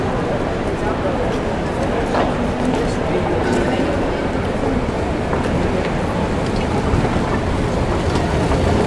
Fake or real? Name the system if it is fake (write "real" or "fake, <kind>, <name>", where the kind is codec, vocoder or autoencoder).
real